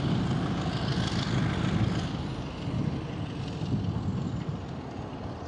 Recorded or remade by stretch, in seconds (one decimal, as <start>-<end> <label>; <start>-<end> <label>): 0.0-2.8 recorded; 2.8-4.5 remade; 4.5-5.5 recorded